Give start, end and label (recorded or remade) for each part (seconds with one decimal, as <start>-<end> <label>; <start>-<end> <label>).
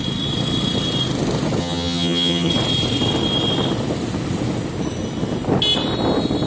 0.0-1.6 recorded; 1.6-2.5 remade; 2.5-6.5 recorded